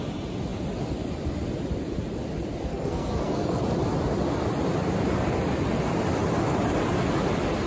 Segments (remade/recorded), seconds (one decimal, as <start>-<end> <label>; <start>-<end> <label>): 0.0-2.7 recorded; 2.7-3.6 remade; 3.6-7.7 recorded